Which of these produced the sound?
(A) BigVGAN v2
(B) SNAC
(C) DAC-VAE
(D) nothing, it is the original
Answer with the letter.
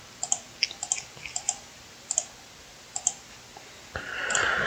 D